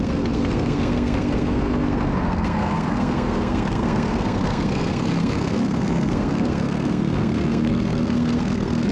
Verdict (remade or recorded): remade